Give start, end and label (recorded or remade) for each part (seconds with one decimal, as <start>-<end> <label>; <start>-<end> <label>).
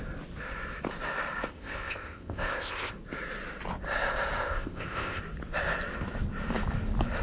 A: 0.0-1.5 recorded; 1.5-2.9 remade; 2.9-4.4 recorded; 4.4-5.2 remade; 5.2-7.2 recorded